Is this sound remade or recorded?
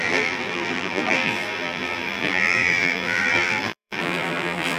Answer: remade